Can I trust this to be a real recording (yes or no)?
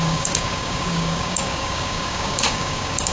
no